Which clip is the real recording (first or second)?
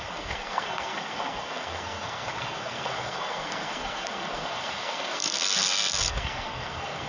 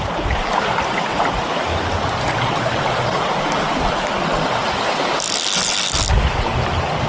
second